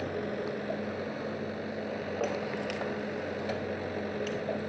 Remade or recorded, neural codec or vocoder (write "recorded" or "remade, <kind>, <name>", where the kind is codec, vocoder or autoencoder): recorded